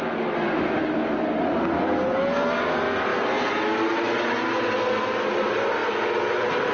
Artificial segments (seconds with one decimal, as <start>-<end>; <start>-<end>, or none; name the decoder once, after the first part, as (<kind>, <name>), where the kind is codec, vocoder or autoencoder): 0.8-2.2 (vocoder, BigVGAN v2)